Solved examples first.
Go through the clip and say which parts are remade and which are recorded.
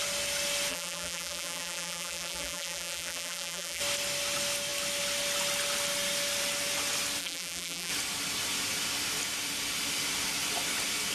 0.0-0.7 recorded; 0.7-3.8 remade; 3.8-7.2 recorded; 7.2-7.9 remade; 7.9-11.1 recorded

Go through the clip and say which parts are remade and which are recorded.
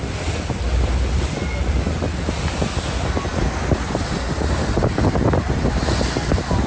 0.0-2.9 remade; 2.9-6.7 recorded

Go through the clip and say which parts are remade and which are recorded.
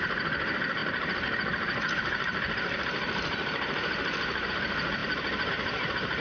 0.0-0.8 recorded; 0.8-4.5 remade; 4.5-6.2 recorded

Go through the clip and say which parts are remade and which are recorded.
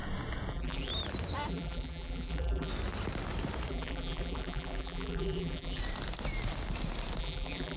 0.0-0.5 recorded; 0.5-0.9 remade; 0.9-1.5 recorded; 1.5-2.7 remade; 2.7-3.7 recorded; 3.7-5.8 remade; 5.8-7.2 recorded; 7.2-7.8 remade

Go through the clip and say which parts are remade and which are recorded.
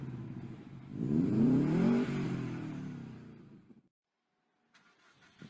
0.0-0.9 recorded; 0.9-4.2 remade; 4.2-5.5 recorded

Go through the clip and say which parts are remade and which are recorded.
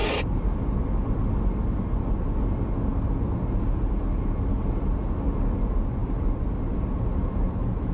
0.0-1.1 remade; 1.1-6.0 recorded; 6.0-6.6 remade; 6.6-7.9 recorded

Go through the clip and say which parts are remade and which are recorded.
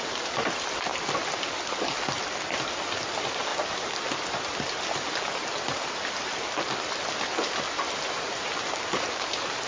0.0-9.7 remade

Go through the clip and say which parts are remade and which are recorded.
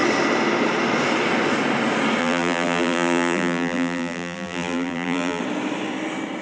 0.0-2.2 recorded; 2.2-5.4 remade; 5.4-6.4 recorded